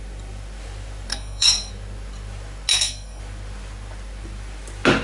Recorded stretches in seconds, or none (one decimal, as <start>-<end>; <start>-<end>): 0.0-1.1; 1.7-2.7; 3.2-5.0